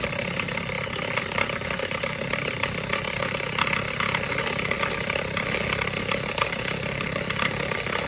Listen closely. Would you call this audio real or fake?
real